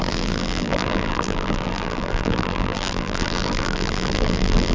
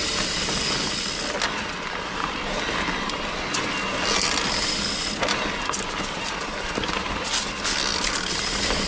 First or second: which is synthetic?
first